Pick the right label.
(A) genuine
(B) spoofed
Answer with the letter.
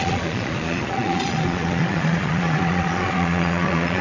B